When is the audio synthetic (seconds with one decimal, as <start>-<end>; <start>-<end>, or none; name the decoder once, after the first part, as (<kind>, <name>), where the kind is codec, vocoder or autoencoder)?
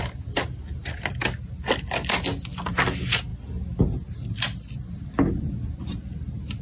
none